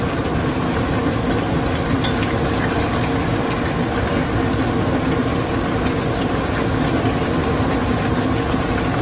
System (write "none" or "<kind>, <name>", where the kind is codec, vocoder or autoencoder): none